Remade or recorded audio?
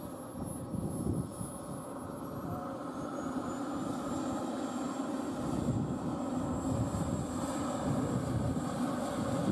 recorded